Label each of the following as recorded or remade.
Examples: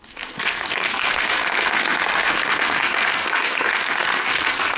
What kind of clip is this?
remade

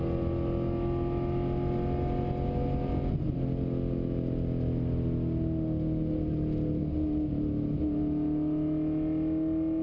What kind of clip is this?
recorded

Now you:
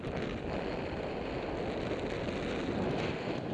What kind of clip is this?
recorded